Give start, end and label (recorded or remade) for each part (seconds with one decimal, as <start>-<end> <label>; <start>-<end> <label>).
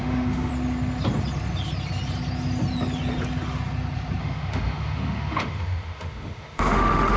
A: 0.0-0.5 remade; 0.5-4.2 recorded; 4.2-7.2 remade